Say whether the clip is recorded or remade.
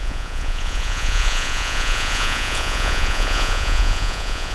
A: remade